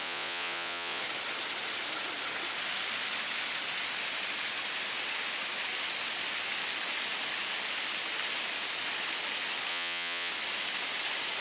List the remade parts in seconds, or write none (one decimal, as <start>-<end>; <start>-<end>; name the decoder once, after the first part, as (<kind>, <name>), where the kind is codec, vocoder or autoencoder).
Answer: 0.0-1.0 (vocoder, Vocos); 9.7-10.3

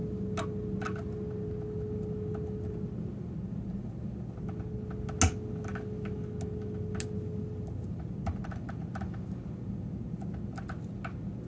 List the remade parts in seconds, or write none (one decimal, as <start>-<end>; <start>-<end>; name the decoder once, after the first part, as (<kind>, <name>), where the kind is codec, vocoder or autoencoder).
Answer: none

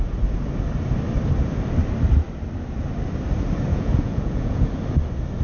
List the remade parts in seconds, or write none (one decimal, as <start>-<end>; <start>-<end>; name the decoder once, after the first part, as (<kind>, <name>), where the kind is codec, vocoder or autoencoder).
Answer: 3.7-4.7 (vocoder, Vocos)

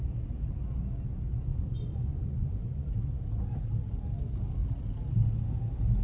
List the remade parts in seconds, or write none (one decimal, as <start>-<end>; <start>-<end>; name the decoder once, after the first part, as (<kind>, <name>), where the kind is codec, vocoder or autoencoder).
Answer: 1.5-2.9 (vocoder, Vocos)

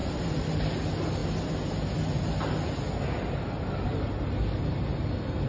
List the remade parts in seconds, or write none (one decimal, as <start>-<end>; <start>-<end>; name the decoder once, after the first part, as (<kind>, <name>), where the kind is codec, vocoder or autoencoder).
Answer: none